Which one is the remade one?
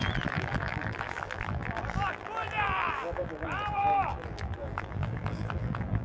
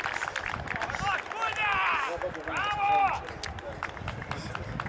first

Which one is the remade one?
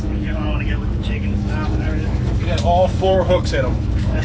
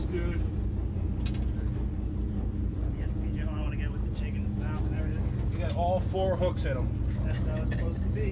first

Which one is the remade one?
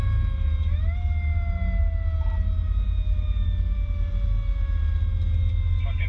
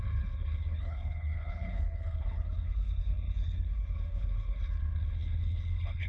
second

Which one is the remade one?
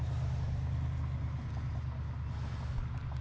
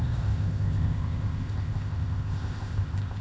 second